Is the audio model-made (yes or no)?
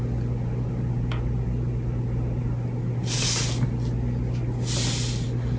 no